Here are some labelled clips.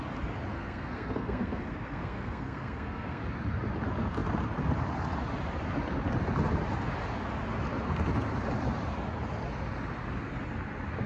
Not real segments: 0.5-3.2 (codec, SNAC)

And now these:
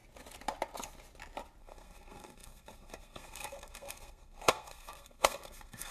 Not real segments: 1.6-5.9 (codec, SNAC)